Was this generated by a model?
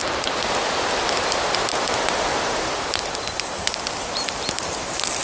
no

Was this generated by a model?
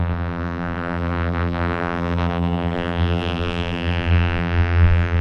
yes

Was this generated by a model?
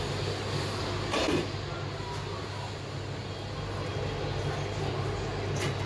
no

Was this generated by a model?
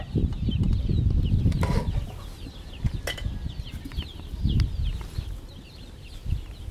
no